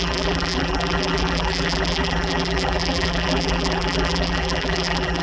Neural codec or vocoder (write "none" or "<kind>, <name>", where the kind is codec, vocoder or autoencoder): vocoder, BigVGAN v2